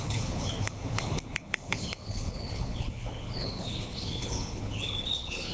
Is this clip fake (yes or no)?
yes